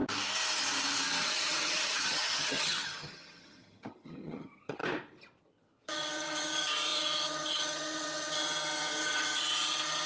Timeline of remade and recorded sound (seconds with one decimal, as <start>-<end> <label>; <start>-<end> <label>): 0.0-1.2 recorded; 1.2-4.8 remade; 4.8-5.4 recorded; 5.4-10.1 remade